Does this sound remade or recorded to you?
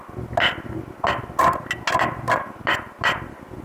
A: recorded